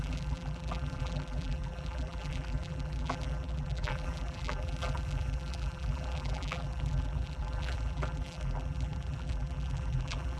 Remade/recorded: remade